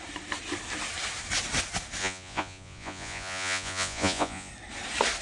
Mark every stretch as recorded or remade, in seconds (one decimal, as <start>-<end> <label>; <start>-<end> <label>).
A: 0.0-2.0 recorded; 2.0-4.5 remade; 4.5-5.2 recorded